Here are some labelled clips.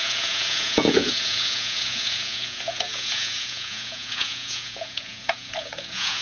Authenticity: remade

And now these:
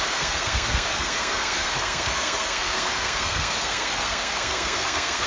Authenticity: remade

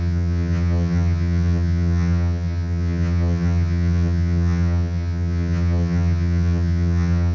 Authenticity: remade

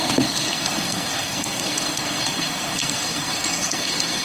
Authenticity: remade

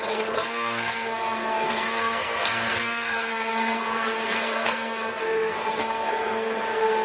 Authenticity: remade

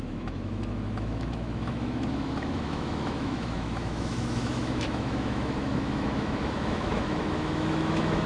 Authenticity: remade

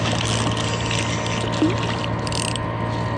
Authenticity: recorded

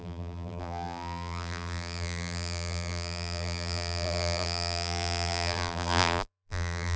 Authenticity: remade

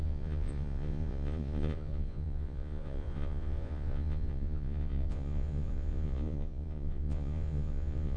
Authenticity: remade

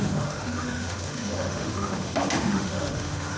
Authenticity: remade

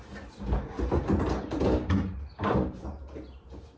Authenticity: recorded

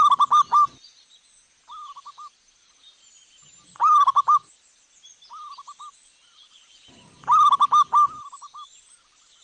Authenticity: recorded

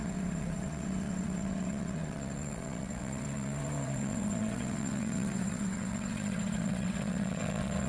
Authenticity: remade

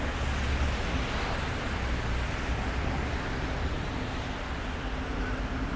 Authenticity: recorded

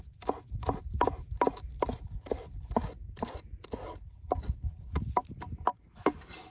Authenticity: recorded